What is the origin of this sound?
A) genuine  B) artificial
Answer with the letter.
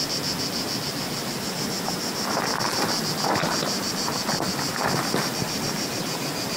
A